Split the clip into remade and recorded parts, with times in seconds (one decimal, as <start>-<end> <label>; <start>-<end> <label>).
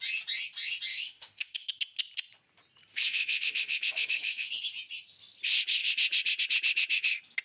0.0-0.9 recorded; 0.9-1.7 remade; 1.7-2.9 recorded; 2.9-4.5 remade; 4.5-7.4 recorded